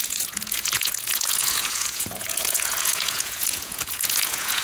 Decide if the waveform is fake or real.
fake